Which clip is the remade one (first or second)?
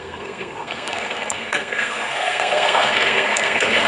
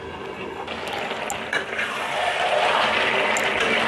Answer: first